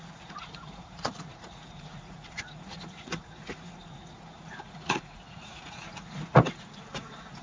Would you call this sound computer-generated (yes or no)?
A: yes